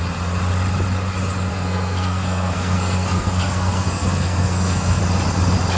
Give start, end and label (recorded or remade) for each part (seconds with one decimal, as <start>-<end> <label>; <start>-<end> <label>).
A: 0.0-1.5 recorded; 1.5-5.0 remade; 5.0-5.8 recorded